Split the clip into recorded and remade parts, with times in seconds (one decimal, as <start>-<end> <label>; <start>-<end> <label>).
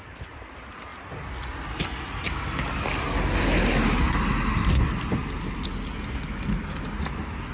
0.0-7.5 recorded